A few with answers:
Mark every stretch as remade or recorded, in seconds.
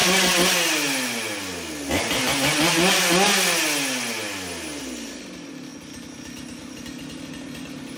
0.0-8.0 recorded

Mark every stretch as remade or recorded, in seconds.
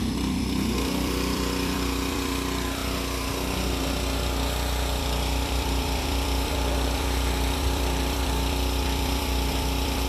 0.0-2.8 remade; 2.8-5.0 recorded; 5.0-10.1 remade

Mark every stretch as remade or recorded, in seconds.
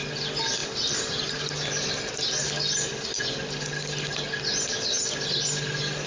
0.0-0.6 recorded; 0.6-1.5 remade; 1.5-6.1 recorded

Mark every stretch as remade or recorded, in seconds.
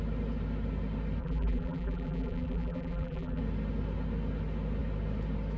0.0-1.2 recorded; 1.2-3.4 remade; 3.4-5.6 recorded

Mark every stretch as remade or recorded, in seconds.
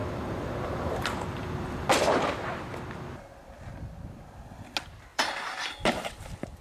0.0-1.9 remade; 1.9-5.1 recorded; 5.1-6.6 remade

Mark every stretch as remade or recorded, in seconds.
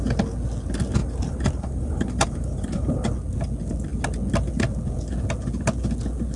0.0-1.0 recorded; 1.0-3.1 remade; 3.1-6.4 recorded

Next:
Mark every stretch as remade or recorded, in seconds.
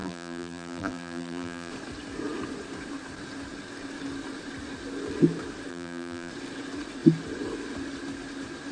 0.0-1.7 remade; 1.7-5.7 recorded; 5.7-6.3 remade; 6.3-8.7 recorded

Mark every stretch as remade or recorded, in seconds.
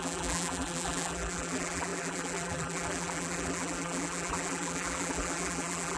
0.0-6.0 remade